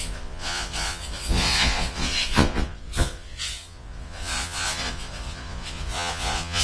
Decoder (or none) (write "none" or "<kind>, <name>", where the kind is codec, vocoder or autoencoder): vocoder, Vocos